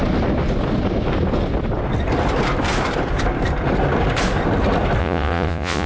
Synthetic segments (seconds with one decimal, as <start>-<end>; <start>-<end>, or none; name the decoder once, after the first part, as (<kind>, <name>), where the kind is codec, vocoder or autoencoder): 5.0-5.9 (vocoder, Vocos)